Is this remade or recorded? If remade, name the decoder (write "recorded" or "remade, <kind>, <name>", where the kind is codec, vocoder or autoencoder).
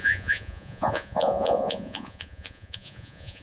remade, vocoder, Vocos